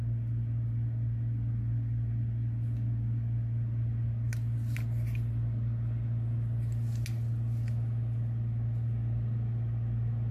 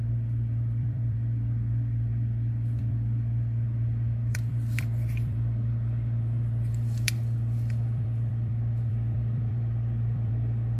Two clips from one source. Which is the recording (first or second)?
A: first